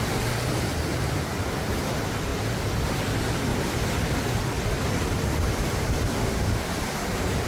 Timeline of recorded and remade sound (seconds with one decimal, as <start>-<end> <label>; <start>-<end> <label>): 0.0-6.2 recorded; 6.2-6.7 remade; 6.7-7.5 recorded